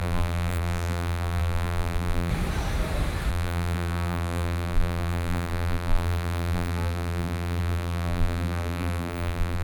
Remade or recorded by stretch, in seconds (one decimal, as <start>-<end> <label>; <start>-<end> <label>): 0.0-2.3 remade; 2.3-3.3 recorded; 3.3-9.6 remade